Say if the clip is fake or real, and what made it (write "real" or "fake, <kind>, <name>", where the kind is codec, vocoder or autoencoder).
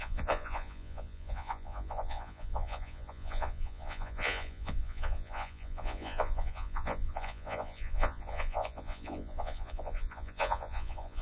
fake, vocoder, Vocos